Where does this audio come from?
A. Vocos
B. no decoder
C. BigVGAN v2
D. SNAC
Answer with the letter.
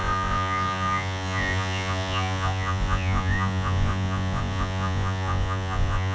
A